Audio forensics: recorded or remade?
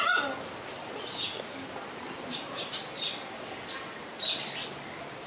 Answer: recorded